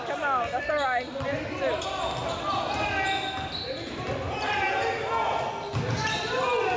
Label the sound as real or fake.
real